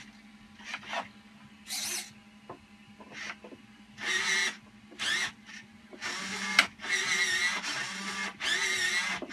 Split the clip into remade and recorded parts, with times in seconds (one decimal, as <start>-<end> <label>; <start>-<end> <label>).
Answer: 0.0-9.3 recorded